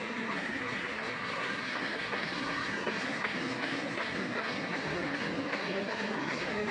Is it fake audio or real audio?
fake